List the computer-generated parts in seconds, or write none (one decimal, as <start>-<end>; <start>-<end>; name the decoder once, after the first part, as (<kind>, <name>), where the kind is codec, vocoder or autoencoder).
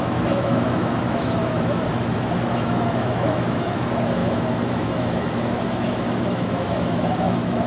0.0-7.7 (autoencoder, DAC-VAE)